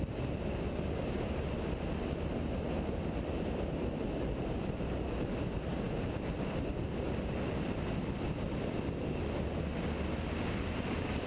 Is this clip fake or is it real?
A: real